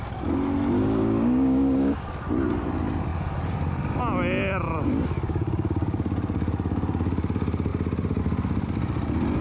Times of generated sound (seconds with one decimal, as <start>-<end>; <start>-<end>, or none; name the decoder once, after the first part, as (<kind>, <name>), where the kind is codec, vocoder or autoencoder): 0.8-2.0 (codec, DAC); 5.3-6.1